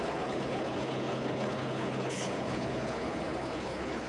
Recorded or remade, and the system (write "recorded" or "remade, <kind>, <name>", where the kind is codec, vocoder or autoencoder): remade, codec, HILCodec